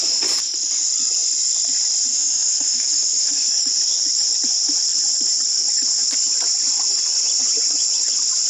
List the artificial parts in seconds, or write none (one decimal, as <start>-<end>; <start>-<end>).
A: 2.1-3.6